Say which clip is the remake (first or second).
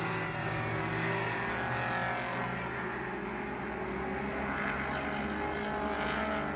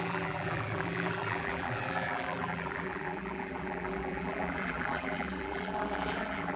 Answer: second